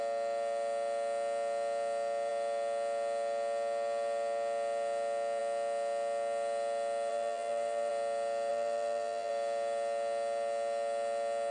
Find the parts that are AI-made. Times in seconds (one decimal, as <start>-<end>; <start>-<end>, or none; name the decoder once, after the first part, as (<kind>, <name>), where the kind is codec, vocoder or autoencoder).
7.1-7.9 (vocoder, BigVGAN v2); 8.5-9.3